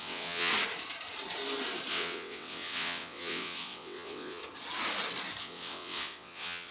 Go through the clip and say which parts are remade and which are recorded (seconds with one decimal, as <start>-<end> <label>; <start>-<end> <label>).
0.0-0.5 remade; 0.5-1.9 recorded; 1.9-4.4 remade; 4.4-5.4 recorded; 5.4-6.7 remade